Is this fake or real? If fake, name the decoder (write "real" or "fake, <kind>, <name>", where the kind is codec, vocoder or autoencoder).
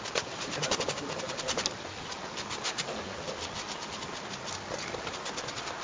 real